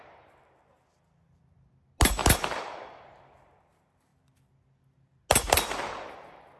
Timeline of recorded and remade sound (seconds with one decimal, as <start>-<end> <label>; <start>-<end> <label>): 0.0-6.6 recorded